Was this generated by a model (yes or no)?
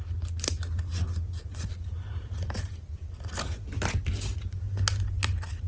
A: no